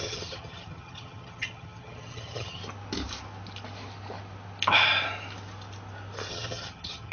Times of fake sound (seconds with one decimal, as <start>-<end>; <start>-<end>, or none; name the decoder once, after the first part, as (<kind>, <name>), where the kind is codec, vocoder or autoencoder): 0.0-2.6 (vocoder, HiFi-GAN); 6.3-7.1